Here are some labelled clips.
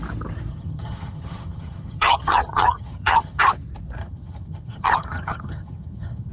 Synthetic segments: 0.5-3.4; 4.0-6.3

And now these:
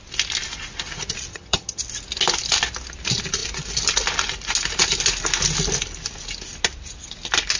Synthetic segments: 1.3-1.8

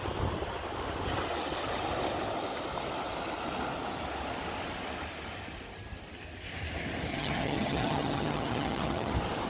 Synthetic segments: 7.1-9.1

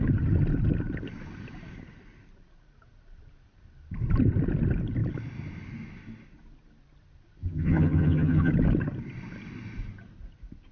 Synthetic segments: 7.4-8.5

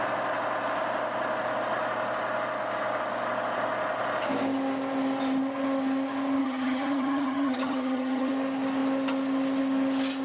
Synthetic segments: 6.4-8.3

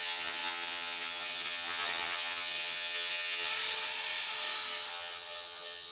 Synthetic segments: 0.0-3.5; 4.9-5.9